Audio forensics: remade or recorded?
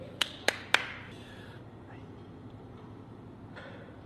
remade